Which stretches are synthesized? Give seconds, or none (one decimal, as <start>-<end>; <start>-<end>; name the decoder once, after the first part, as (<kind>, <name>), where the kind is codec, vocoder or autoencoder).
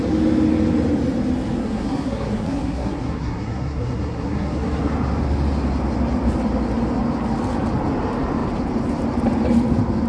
1.6-4.9 (codec, SNAC)